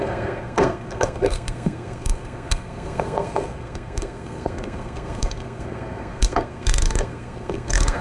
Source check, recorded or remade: remade